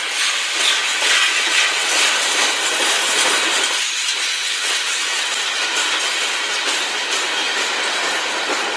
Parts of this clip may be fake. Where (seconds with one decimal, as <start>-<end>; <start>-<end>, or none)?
0.9-2.3; 4.3-5.3